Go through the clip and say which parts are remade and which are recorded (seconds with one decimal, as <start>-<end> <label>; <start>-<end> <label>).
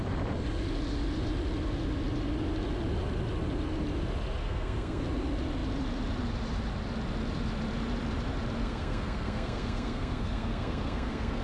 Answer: 0.0-4.4 recorded; 4.4-5.0 remade; 5.0-8.6 recorded; 8.6-11.4 remade